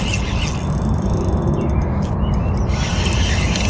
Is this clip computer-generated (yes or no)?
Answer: no